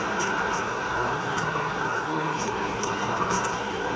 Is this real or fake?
fake